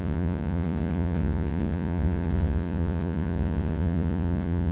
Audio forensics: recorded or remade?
remade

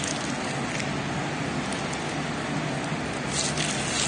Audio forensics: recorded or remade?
recorded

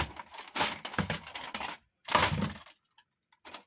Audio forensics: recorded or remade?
recorded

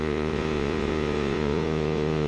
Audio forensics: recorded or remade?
remade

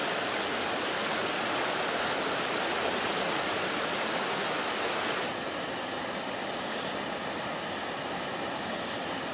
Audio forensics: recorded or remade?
recorded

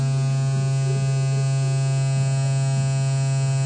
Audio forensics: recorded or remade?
recorded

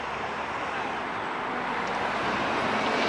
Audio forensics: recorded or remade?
recorded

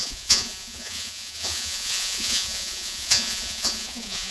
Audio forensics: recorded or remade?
remade